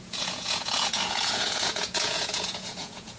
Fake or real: fake